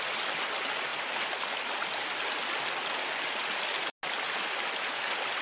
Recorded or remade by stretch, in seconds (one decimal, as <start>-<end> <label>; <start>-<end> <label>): 0.0-5.4 recorded